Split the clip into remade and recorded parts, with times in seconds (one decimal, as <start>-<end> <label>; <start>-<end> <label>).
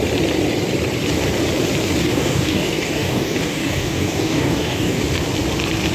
0.0-2.0 recorded; 2.0-5.0 remade; 5.0-5.9 recorded